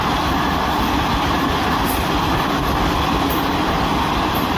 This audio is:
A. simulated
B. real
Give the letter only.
B